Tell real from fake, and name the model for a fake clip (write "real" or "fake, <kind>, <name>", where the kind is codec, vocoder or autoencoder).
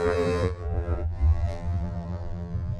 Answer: fake, vocoder, BigVGAN v2